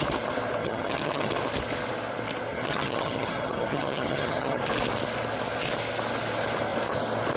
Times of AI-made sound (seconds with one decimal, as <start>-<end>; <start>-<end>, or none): 0.6-1.3; 2.5-4.6